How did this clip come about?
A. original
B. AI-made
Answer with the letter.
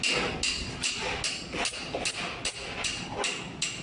A